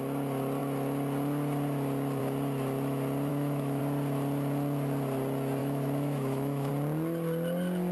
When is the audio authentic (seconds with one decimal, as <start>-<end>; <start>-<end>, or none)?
0.0-3.3; 3.8-5.6; 6.7-7.9